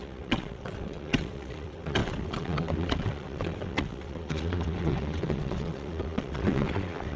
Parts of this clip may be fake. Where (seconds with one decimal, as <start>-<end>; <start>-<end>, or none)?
0.0-7.2